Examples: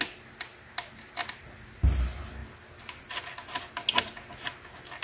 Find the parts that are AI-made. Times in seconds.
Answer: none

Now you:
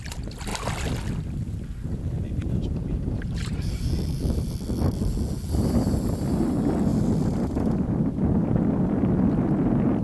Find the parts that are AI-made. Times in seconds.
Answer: 2.4-4.5 (vocoder, BigVGAN v2)

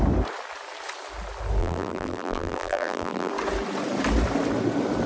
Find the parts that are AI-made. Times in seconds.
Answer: 1.6-3.3 (vocoder, BigVGAN v2)

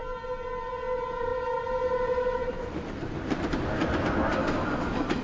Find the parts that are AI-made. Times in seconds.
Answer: 1.3-3.5 (vocoder, BigVGAN v2)